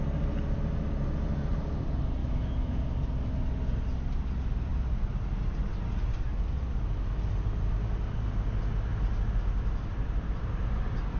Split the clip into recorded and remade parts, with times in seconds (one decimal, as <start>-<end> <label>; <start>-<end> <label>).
0.0-2.2 recorded; 2.2-2.8 remade; 2.8-11.2 recorded